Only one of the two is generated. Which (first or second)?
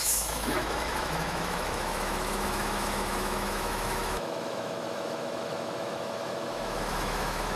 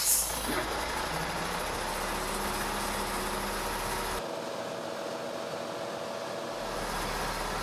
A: first